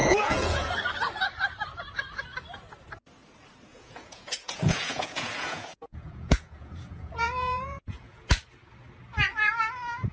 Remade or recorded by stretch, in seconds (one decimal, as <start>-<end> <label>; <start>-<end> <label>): 0.0-0.7 remade; 0.7-3.7 recorded; 3.7-8.3 remade; 8.3-10.1 recorded